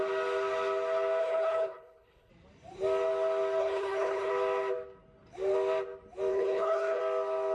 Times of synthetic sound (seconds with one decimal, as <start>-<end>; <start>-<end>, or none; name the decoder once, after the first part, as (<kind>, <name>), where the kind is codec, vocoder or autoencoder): 1.2-2.3 (codec, HILCodec); 3.6-4.3; 6.3-7.0